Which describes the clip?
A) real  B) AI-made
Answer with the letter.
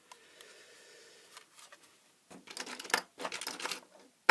A